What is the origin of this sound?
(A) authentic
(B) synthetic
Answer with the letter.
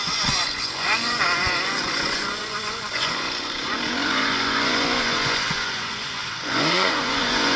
B